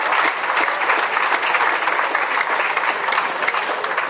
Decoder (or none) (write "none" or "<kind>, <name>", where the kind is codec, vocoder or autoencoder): none